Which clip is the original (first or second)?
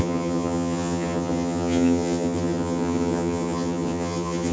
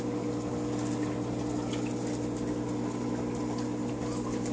second